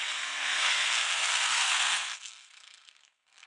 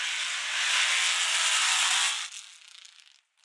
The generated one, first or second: first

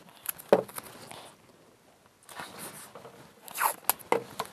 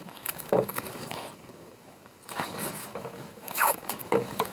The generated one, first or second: second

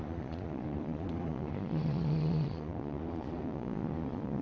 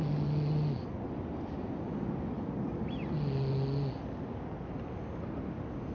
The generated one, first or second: first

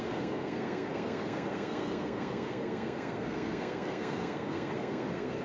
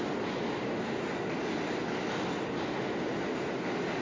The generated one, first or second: first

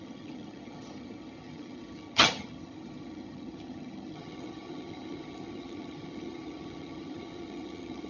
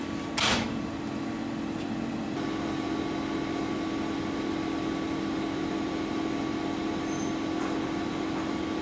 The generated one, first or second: first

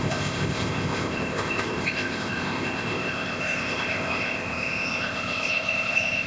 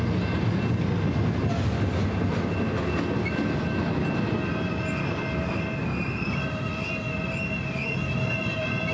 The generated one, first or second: first